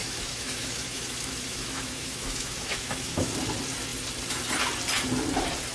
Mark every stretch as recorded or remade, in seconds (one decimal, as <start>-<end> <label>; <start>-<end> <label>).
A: 0.0-3.3 remade; 3.3-5.7 recorded